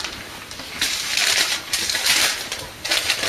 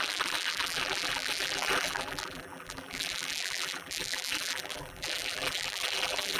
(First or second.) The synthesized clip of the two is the second